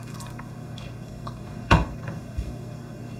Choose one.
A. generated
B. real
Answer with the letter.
A